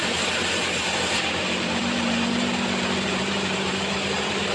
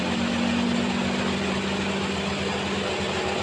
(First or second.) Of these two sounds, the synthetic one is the first